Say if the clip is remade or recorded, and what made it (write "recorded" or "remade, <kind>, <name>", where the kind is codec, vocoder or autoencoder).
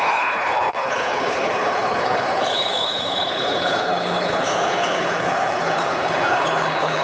remade, codec, HILCodec